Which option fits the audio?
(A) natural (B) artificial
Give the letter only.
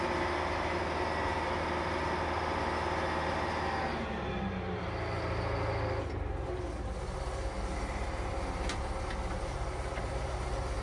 A